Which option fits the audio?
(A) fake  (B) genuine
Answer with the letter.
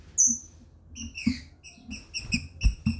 B